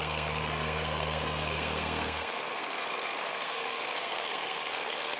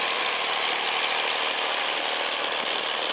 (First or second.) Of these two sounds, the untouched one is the second